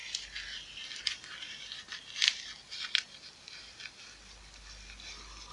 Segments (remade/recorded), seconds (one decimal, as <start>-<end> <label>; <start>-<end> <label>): 0.0-5.5 recorded